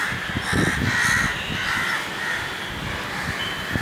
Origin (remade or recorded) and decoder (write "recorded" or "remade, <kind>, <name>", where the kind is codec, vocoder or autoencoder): recorded